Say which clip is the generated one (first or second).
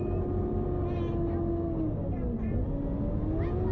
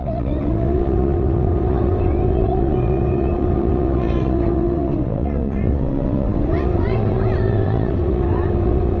second